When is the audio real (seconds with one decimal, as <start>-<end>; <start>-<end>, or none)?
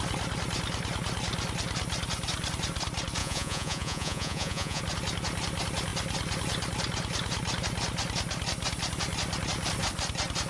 0.0-3.2; 4.8-10.5